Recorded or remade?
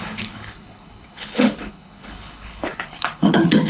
remade